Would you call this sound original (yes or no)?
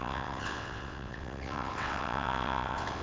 no